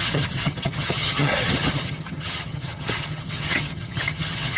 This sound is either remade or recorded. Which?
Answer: remade